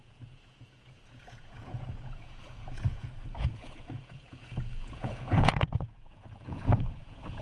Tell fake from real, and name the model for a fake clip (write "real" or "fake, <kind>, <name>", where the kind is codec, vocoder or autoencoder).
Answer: fake, vocoder, Vocos